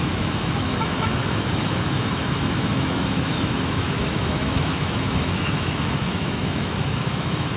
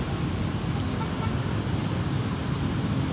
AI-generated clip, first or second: first